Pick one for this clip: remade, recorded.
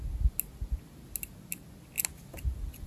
recorded